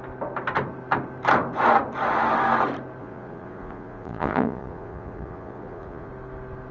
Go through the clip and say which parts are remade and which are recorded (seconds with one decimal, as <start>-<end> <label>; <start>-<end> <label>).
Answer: 0.0-3.0 recorded; 3.0-6.1 remade; 6.1-6.7 recorded